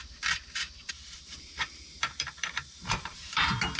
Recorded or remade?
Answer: remade